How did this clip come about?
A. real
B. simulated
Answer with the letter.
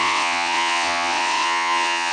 B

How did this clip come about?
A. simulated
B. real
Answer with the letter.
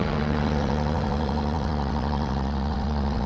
A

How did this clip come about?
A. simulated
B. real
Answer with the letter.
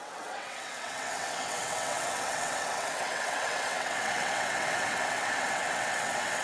A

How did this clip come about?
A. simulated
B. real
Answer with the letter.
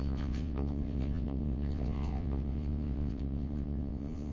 A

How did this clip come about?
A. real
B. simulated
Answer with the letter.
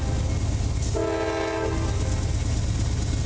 A